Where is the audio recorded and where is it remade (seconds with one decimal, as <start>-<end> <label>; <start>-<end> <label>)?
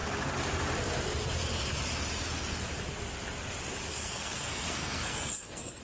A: 0.0-3.9 recorded; 3.9-5.8 remade